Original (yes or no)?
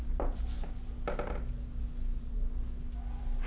yes